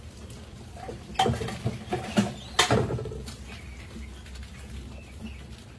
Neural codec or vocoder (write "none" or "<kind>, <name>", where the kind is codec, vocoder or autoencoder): none